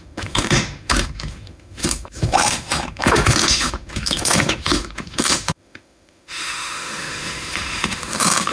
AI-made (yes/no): yes